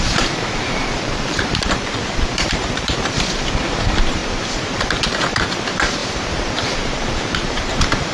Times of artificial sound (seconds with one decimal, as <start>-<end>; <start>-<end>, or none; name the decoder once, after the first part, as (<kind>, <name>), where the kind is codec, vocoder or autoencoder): 0.0-8.1 (vocoder, BigVGAN v2)